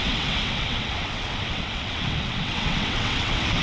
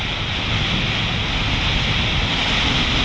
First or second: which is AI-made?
first